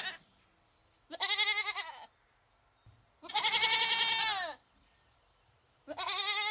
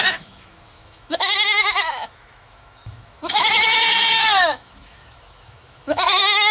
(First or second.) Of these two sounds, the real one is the first